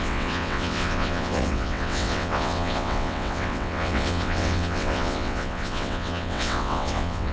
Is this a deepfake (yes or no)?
yes